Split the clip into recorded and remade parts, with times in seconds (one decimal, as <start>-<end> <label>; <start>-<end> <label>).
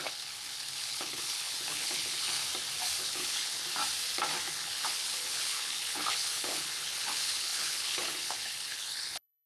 0.0-2.4 remade; 2.4-3.0 recorded; 3.0-3.6 remade; 3.6-4.5 recorded; 4.5-9.5 remade